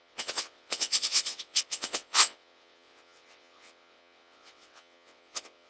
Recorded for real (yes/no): no